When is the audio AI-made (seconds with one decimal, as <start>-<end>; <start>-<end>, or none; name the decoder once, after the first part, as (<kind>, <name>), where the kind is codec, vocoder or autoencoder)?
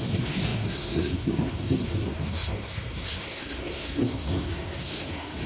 0.0-5.5 (codec, SNAC)